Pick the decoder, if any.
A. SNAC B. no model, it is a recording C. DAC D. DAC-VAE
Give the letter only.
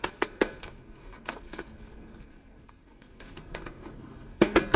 A